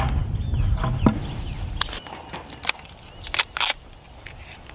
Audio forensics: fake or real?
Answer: real